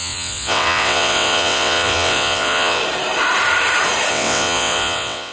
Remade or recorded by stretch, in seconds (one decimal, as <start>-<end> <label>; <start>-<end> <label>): 0.0-2.8 remade; 2.8-4.1 recorded; 4.1-5.3 remade